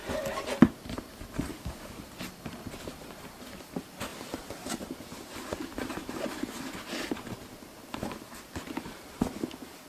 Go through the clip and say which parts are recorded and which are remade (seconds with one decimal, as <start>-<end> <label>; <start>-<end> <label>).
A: 0.0-1.5 recorded; 1.5-2.0 remade; 2.0-9.9 recorded